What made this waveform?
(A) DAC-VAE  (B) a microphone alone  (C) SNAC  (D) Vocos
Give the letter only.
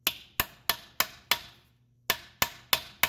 B